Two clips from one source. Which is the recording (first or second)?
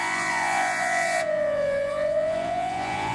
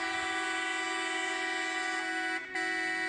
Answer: second